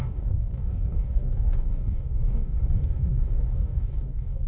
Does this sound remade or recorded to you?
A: remade